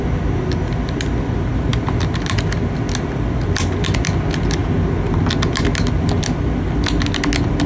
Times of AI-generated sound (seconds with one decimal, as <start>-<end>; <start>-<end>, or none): none